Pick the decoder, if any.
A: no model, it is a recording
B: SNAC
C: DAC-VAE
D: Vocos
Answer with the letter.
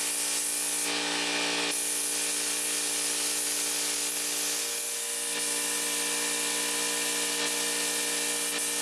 A